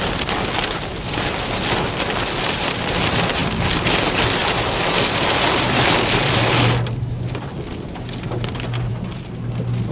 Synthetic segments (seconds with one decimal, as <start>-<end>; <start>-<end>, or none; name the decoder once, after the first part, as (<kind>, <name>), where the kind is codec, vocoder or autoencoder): none